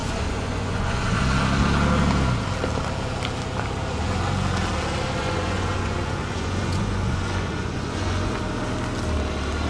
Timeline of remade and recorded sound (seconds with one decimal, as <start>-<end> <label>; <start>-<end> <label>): 0.0-1.2 remade; 1.2-5.2 recorded; 5.2-8.4 remade; 8.4-9.7 recorded